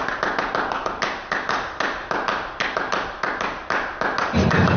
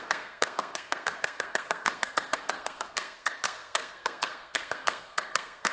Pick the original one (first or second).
first